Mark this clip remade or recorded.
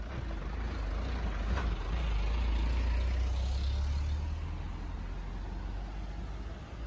recorded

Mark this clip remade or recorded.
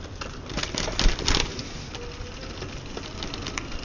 recorded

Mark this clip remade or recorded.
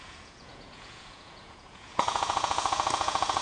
remade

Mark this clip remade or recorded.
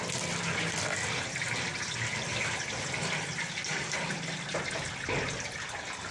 recorded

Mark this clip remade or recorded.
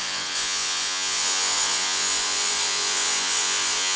remade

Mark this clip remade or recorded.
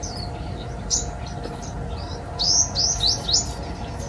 recorded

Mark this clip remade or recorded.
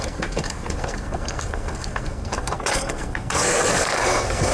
remade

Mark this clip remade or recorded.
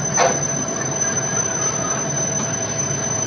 remade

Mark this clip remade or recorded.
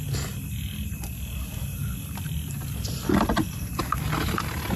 recorded